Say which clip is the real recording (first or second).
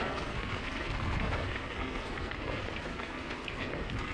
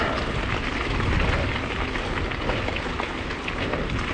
second